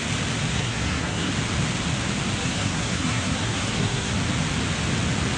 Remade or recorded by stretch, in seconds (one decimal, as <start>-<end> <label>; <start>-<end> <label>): 0.0-0.5 recorded; 0.5-1.3 remade; 1.3-2.4 recorded; 2.4-4.1 remade; 4.1-5.4 recorded